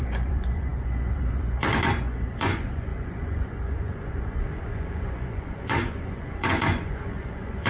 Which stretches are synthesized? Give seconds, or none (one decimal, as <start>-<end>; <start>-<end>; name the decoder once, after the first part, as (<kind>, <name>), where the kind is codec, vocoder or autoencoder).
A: 0.0-7.7 (vocoder, Vocos)